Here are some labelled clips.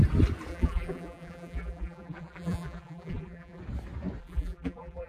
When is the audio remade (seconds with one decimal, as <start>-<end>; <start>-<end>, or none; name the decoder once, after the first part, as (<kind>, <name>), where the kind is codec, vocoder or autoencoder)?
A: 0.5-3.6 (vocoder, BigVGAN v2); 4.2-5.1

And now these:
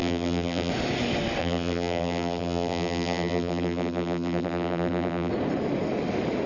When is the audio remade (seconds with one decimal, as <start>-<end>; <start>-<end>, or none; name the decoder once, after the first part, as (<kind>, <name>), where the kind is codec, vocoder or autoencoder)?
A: 0.0-0.7 (vocoder, BigVGAN v2); 1.4-5.3

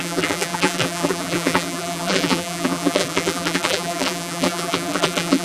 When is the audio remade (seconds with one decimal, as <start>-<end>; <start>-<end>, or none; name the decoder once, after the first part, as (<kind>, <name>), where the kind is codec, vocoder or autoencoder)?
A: 0.0-5.4 (vocoder, BigVGAN v2)

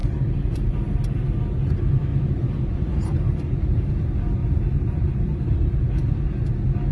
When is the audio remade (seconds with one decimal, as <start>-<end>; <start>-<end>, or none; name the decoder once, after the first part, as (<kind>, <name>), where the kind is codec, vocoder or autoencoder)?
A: 0.0-0.7 (vocoder, BigVGAN v2); 2.1-3.9; 4.4-6.0